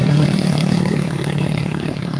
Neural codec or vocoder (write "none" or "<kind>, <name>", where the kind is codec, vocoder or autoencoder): codec, SNAC